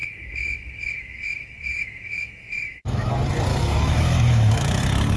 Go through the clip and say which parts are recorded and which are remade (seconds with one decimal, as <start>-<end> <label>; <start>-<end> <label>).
0.0-3.1 remade; 3.1-3.5 recorded; 3.5-4.8 remade; 4.8-5.2 recorded